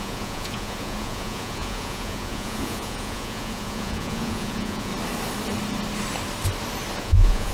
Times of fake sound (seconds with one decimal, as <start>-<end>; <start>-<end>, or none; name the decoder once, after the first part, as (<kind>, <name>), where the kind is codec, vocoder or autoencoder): 0.0-4.9 (vocoder, Vocos); 7.0-7.5